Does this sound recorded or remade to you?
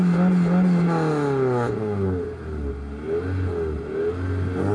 recorded